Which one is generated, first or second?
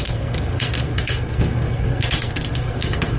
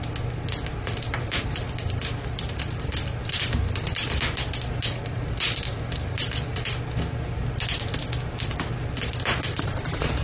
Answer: first